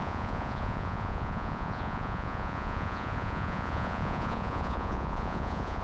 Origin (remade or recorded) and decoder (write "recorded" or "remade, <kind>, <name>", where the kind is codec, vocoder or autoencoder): remade, vocoder, Vocos